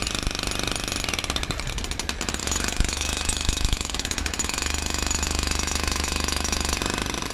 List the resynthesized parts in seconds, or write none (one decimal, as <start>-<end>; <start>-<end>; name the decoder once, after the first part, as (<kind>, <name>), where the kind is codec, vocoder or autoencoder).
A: 2.4-6.8 (autoencoder, DAC-VAE)